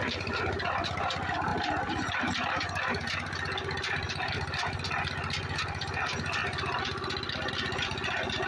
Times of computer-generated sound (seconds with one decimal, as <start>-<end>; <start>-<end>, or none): none